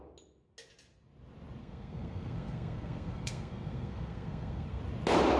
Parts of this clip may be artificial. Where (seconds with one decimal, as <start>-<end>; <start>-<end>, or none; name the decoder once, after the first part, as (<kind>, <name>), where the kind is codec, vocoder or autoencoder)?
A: 1.6-4.8 (codec, SNAC)